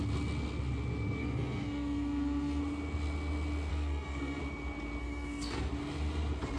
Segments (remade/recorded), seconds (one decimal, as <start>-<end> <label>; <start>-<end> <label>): 0.0-1.2 recorded; 1.2-2.6 remade; 2.6-3.7 recorded; 3.7-4.4 remade; 4.4-5.0 recorded; 5.0-5.7 remade; 5.7-6.6 recorded